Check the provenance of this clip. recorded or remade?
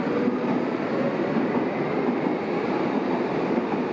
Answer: recorded